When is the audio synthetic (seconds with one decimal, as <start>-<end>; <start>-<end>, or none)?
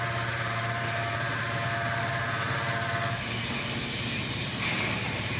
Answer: 0.0-0.8; 4.0-5.4